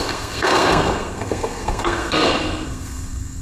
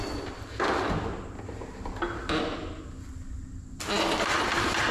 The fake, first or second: first